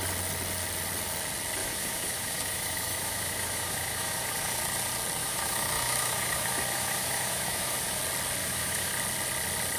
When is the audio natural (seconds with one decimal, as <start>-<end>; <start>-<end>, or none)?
0.0-1.6; 4.6-5.2; 8.0-8.4; 8.9-9.8